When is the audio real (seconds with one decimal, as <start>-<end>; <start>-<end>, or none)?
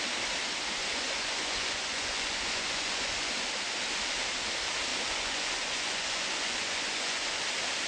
0.0-0.8; 3.3-4.9; 7.4-7.9